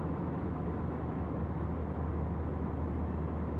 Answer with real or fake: fake